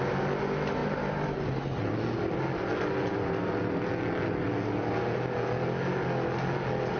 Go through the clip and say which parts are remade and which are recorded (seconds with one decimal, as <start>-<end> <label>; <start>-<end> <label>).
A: 0.0-0.8 recorded; 0.8-1.8 remade; 1.8-7.0 recorded